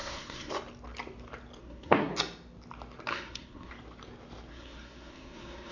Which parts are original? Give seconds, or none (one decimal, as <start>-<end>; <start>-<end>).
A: 0.5-1.6; 2.1-3.1; 3.7-4.5